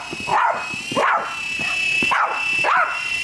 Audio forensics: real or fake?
real